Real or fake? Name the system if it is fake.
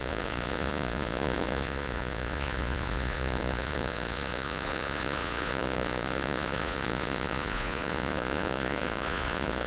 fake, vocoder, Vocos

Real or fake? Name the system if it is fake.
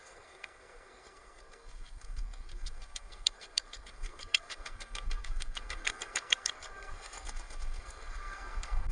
fake, codec, SNAC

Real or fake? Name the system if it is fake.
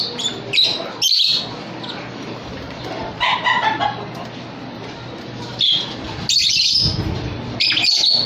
real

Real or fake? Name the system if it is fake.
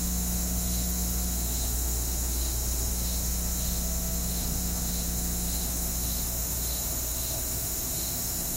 fake, autoencoder, DAC-VAE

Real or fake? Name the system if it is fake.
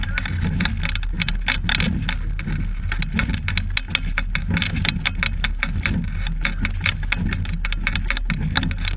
real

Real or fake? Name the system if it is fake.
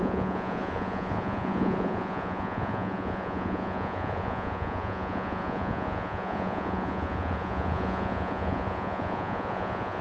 fake, vocoder, Vocos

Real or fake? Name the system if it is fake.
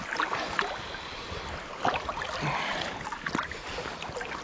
real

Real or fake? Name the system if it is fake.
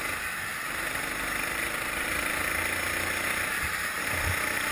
real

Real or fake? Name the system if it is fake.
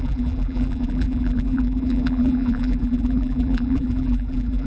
fake, vocoder, BigVGAN v2